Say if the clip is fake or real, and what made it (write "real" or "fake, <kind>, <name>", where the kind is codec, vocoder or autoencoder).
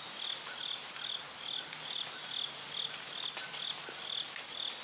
real